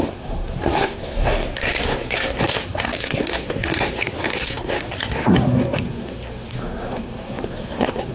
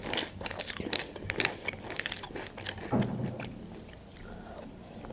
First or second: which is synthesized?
first